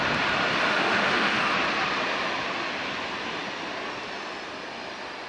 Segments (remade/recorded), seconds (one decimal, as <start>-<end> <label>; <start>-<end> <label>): 0.0-0.7 recorded; 0.7-1.4 remade; 1.4-5.3 recorded